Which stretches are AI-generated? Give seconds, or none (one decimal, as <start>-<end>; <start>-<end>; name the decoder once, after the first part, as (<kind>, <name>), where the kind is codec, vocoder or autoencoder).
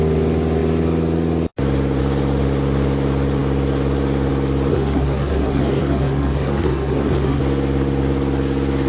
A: 4.7-7.4 (codec, SNAC)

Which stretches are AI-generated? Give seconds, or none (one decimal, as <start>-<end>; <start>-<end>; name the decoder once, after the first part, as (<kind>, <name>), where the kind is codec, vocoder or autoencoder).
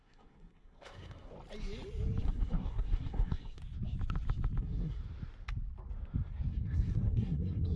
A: 0.0-1.3 (codec, SNAC); 2.2-3.6; 4.6-5.0; 6.5-7.8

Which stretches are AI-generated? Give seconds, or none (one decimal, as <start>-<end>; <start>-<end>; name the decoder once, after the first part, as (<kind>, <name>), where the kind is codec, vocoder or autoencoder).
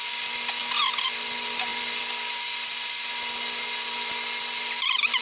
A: none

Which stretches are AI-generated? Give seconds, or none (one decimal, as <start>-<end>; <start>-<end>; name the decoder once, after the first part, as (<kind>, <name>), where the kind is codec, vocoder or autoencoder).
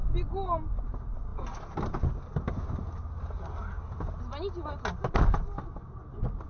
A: none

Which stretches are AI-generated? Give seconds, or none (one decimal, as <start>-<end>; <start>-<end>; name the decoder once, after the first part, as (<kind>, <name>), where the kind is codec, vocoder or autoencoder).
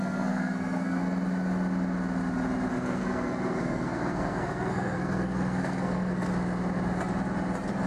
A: 0.0-1.0 (codec, SNAC); 2.7-6.3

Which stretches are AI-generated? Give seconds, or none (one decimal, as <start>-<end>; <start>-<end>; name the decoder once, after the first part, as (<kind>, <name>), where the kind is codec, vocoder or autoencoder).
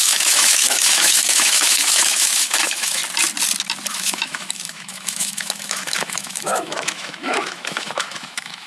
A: 0.0-3.0 (autoencoder, DAC-VAE); 3.9-8.7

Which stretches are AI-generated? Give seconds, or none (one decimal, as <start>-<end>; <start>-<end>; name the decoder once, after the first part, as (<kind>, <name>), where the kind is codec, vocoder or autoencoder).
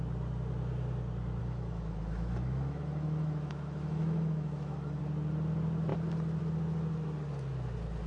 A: 1.4-5.0 (autoencoder, DAC-VAE)